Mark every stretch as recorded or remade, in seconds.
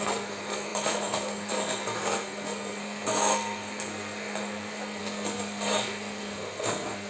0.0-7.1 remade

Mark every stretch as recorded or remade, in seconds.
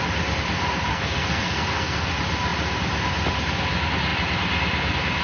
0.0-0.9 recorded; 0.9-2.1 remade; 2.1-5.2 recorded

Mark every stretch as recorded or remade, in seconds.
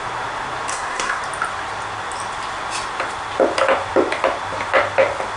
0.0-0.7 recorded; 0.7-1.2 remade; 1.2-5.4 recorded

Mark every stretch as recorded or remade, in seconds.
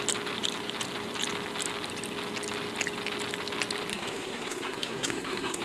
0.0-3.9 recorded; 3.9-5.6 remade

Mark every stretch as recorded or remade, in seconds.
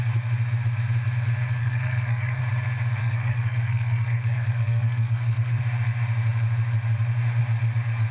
0.0-1.6 recorded; 1.6-2.4 remade; 2.4-3.0 recorded; 3.0-5.6 remade; 5.6-8.1 recorded